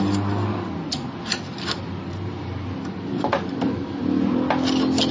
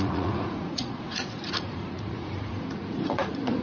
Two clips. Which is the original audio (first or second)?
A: first